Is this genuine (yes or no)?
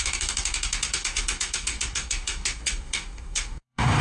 no